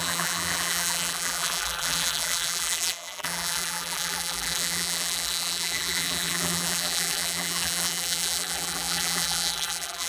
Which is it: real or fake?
fake